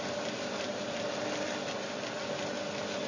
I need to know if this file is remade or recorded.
recorded